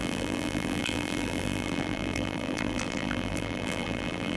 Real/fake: fake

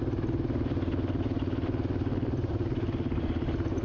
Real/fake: real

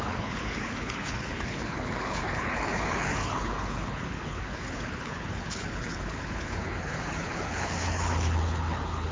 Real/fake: fake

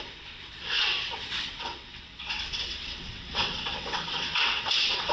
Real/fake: fake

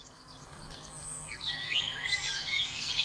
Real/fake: fake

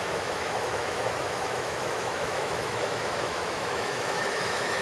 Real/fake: fake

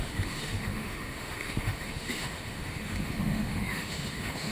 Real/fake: fake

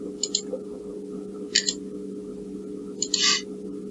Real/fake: real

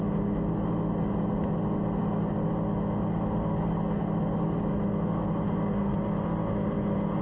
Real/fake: real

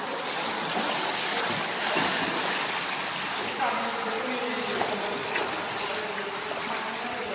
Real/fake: real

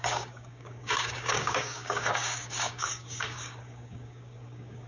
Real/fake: fake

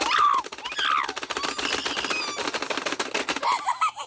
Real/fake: real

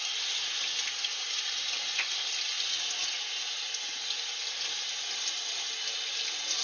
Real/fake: real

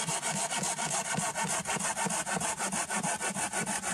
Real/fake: real